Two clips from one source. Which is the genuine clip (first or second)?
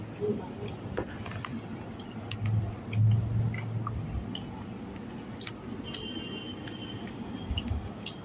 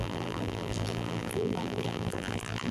first